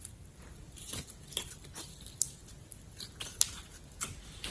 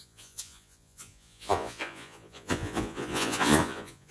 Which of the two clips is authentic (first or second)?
first